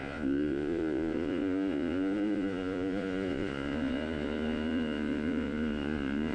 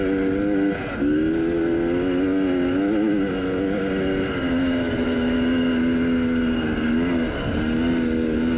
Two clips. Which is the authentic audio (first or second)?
second